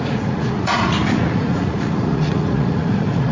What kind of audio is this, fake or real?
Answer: fake